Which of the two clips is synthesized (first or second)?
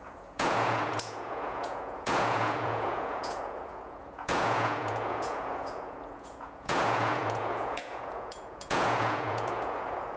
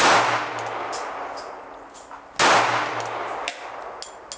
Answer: first